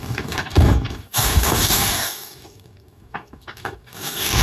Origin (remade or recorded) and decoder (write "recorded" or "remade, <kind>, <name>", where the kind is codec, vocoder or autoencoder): remade, codec, DAC